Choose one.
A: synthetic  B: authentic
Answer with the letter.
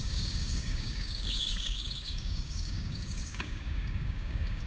A